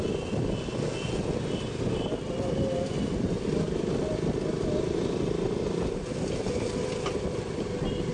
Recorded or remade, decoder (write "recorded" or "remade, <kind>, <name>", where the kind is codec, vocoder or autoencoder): recorded